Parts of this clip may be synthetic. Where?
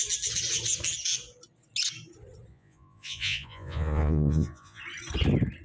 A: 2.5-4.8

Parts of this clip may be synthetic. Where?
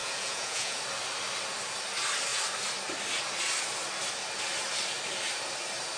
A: 0.0-0.8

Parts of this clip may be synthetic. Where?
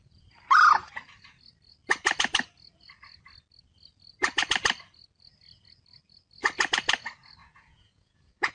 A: 7.4-8.5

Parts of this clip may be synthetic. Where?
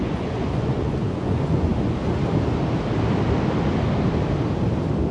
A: 0.0-1.7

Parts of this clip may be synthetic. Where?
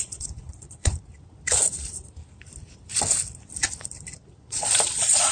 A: 0.0-1.1; 4.3-5.3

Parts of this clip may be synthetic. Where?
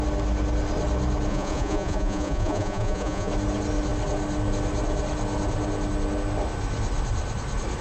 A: 1.3-3.3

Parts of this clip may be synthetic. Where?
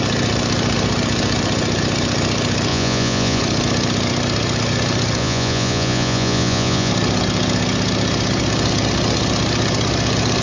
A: 2.7-3.4; 5.2-6.9